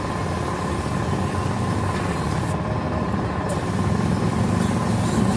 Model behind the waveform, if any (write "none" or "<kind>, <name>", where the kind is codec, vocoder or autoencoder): none